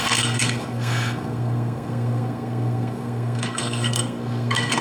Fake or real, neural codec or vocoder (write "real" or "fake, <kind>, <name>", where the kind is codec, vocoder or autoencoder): fake, codec, SNAC